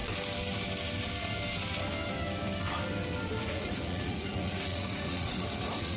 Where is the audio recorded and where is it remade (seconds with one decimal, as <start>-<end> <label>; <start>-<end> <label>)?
0.0-3.4 recorded; 3.4-6.0 remade

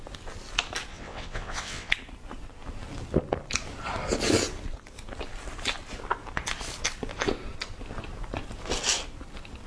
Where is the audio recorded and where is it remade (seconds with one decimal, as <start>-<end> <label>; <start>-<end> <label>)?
0.0-0.9 recorded; 0.9-1.9 remade; 1.9-9.7 recorded

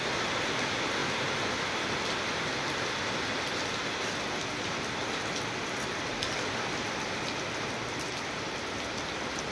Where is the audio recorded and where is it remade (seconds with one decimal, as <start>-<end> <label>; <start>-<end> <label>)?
0.0-9.5 recorded

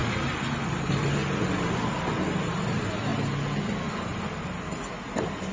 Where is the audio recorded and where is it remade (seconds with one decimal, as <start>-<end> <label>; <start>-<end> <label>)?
0.0-0.5 recorded; 0.5-1.2 remade; 1.2-2.1 recorded; 2.1-3.1 remade; 3.1-5.5 recorded

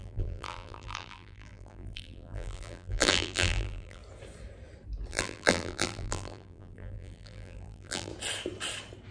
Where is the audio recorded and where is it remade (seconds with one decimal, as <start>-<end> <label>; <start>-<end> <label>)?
0.0-4.0 remade; 4.0-5.1 recorded; 5.1-8.1 remade; 8.1-9.1 recorded